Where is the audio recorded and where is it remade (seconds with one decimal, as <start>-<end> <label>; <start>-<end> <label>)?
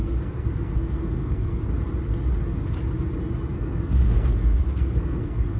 0.0-1.7 remade; 1.7-3.5 recorded; 3.5-5.6 remade